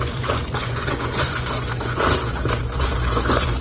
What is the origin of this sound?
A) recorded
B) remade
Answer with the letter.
B